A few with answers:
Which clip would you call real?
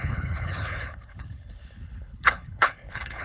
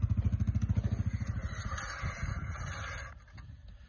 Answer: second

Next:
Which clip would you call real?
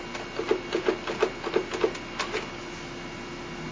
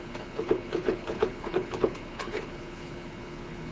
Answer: first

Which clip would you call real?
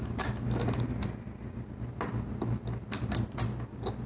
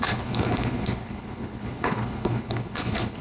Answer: first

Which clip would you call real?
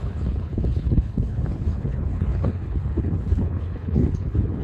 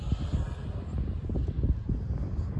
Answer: second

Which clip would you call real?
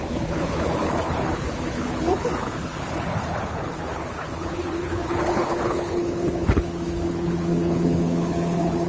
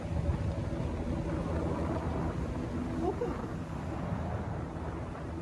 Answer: second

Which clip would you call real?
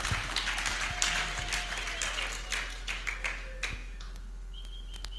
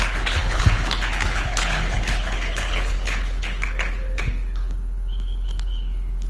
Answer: first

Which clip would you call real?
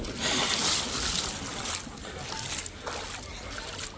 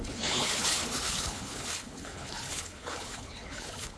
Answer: first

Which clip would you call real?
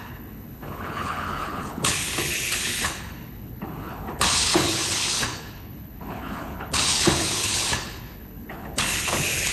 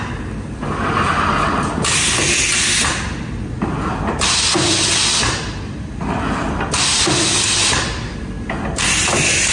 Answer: second